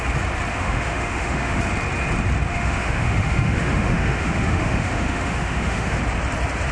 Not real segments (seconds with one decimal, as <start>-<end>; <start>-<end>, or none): 0.5-1.6; 2.5-6.0